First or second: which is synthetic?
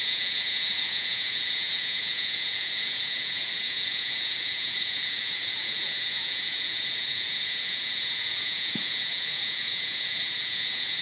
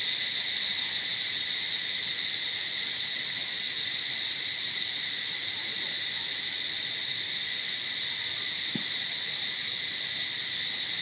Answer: first